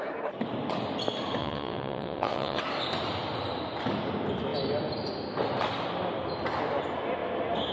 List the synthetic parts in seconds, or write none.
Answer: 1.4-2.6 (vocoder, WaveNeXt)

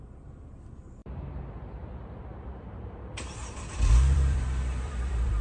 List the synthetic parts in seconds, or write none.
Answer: 0.0-1.0 (vocoder, BigVGAN v2); 2.2-5.4

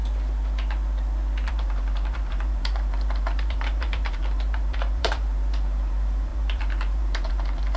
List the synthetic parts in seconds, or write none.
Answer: 1.5-7.8 (vocoder, BigVGAN v2)